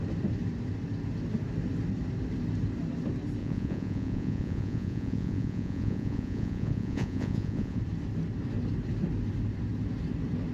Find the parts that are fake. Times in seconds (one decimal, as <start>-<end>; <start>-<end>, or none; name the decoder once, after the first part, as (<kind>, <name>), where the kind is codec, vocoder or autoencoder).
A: 3.4-7.8 (vocoder, Vocos)